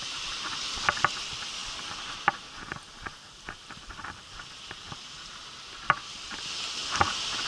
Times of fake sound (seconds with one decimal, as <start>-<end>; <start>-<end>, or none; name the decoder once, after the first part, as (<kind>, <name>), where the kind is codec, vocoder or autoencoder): none